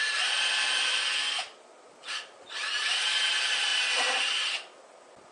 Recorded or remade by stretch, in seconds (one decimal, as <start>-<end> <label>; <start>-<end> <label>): 0.0-5.3 recorded